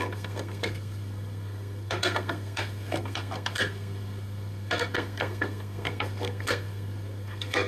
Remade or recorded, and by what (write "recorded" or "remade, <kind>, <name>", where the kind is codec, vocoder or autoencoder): remade, codec, SNAC